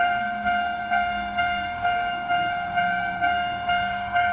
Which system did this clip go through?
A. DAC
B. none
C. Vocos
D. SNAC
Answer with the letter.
D